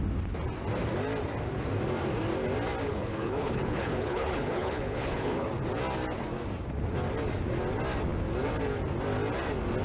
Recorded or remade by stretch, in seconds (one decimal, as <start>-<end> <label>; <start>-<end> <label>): 0.0-2.9 recorded; 2.9-5.5 remade; 5.5-9.8 recorded